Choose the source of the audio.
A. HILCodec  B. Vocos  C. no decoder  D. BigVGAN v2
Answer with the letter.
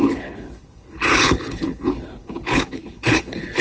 A